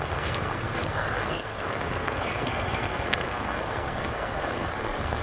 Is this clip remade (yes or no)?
yes